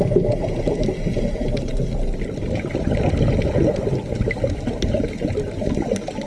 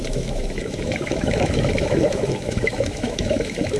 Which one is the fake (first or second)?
second